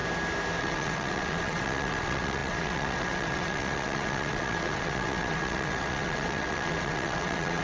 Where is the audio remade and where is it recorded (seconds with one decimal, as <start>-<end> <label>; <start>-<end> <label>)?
0.0-0.6 recorded; 0.6-7.6 remade